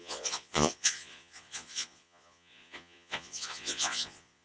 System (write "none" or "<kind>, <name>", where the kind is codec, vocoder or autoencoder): vocoder, Vocos